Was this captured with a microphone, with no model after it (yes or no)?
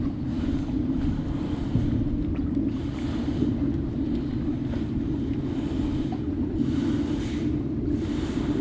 yes